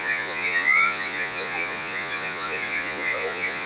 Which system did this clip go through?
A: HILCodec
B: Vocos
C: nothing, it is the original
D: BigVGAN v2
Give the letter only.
B